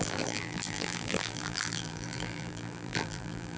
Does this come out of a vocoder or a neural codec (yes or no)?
yes